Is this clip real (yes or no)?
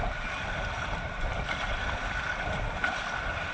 yes